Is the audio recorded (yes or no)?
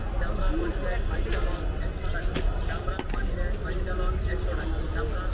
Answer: yes